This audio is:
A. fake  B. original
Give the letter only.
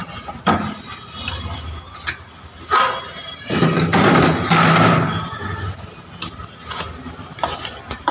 B